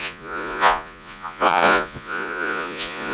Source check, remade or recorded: remade